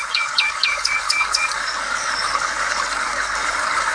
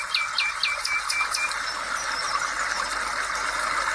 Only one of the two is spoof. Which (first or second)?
first